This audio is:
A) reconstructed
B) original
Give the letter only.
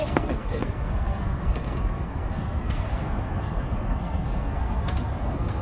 A